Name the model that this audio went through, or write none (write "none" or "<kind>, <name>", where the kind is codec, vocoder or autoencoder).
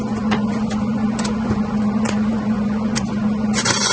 vocoder, Vocos